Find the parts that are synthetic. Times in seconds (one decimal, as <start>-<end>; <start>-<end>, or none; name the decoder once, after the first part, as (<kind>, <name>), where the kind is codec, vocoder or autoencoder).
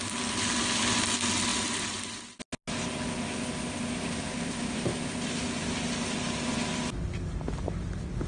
none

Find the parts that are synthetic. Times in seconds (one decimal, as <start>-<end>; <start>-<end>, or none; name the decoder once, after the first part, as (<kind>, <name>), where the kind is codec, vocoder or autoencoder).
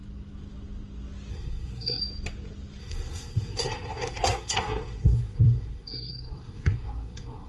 1.3-2.0 (codec, SNAC); 2.8-7.5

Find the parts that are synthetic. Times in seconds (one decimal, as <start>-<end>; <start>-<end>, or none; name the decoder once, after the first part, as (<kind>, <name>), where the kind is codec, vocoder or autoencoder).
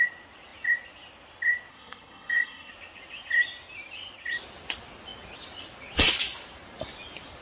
1.7-2.7 (codec, SNAC)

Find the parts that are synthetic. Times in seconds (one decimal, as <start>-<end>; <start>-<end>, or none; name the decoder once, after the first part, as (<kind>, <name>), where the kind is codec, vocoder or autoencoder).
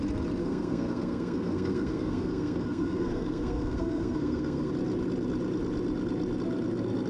0.4-4.7 (codec, SNAC)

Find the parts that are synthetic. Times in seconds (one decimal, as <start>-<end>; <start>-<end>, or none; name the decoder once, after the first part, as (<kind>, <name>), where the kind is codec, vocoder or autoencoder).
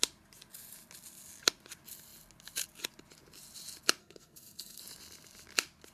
4.0-4.8 (codec, SNAC)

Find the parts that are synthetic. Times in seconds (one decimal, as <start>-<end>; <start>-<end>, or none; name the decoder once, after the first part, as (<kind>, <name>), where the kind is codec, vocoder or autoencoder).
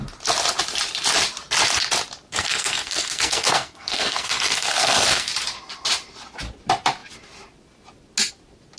2.3-5.3 (codec, SNAC)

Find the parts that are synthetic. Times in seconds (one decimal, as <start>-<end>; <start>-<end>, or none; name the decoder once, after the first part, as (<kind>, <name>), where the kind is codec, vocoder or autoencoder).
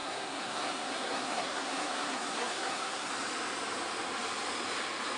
0.0-3.1 (codec, SNAC)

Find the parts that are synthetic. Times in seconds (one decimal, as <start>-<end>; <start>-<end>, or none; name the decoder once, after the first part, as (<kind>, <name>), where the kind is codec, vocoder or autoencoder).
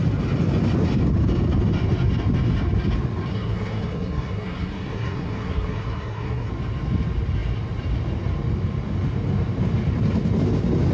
3.3-6.5 (codec, SNAC)